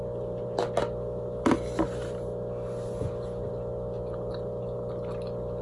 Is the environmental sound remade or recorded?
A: recorded